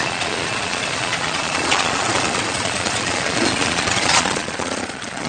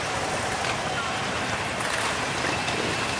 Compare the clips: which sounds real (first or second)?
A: second